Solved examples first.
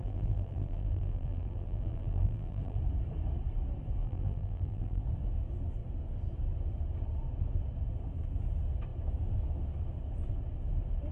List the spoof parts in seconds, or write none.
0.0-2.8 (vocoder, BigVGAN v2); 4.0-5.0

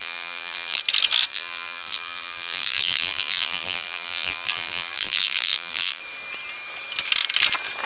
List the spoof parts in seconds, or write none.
0.0-0.8 (vocoder, BigVGAN v2); 1.3-6.0

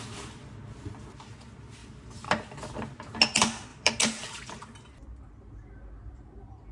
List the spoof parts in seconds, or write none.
1.8-2.5 (vocoder, BigVGAN v2); 3.7-4.9

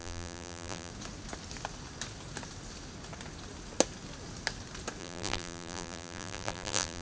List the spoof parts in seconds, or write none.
0.0-0.9 (vocoder, BigVGAN v2); 5.0-7.0

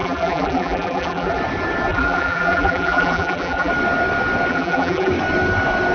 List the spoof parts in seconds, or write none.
0.0-1.4 (vocoder, BigVGAN v2); 1.9-3.7; 4.5-5.1

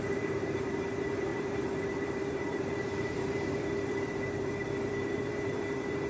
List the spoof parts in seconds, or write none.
0.0-6.1 (vocoder, BigVGAN v2)

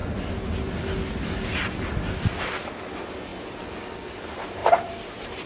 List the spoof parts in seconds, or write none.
4.6-5.5 (vocoder, BigVGAN v2)